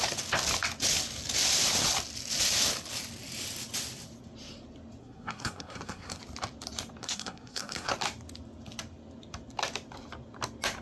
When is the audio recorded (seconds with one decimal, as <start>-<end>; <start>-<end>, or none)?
0.0-5.0; 6.2-7.0; 7.9-10.8